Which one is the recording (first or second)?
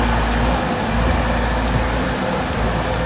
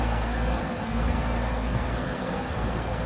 first